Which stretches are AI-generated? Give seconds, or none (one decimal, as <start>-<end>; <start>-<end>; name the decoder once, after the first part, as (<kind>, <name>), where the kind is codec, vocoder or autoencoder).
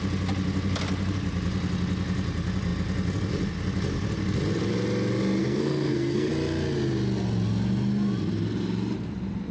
5.4-6.3 (codec, SNAC)